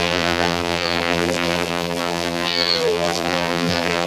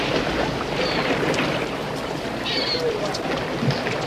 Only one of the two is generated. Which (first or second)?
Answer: first